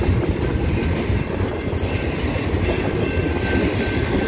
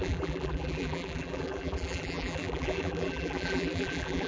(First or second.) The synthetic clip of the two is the second